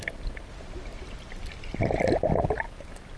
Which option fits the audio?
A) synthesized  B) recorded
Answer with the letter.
B